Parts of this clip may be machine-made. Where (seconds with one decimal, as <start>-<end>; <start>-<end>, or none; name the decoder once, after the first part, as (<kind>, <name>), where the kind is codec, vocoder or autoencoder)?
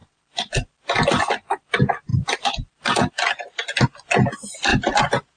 0.0-0.5 (vocoder, BigVGAN v2); 2.1-2.7; 4.7-5.4